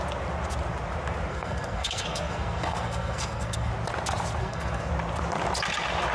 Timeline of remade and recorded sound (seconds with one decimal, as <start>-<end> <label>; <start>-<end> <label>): 0.0-1.3 recorded; 1.3-3.7 remade; 3.7-4.4 recorded; 4.4-4.9 remade; 4.9-6.1 recorded